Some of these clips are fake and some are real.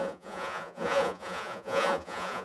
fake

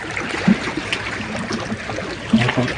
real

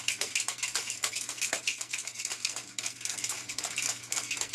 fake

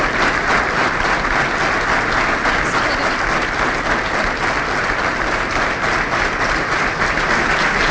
real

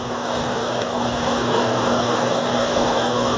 fake